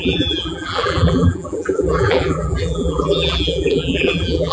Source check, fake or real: fake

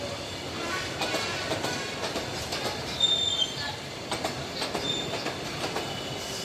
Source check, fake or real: real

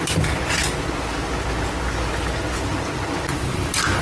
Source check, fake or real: real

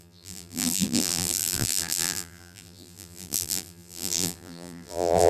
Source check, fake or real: fake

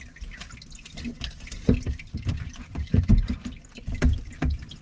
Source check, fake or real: real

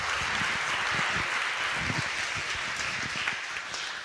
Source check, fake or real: real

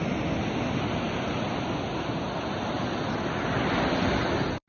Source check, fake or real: real